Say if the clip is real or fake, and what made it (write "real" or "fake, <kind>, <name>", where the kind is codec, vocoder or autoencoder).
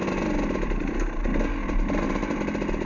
real